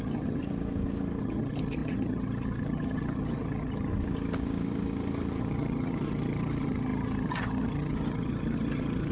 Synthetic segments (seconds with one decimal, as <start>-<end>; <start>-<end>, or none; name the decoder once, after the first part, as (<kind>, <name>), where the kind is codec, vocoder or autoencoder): 0.0-0.4 (vocoder, HiFi-GAN); 1.2-3.9; 5.4-9.1